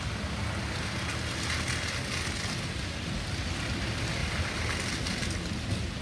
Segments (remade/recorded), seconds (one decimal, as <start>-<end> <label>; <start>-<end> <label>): 0.0-4.2 recorded; 4.2-4.7 remade; 4.7-6.0 recorded